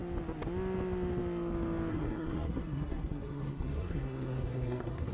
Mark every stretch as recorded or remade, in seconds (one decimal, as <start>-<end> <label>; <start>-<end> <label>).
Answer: 0.0-1.9 recorded; 1.9-5.1 remade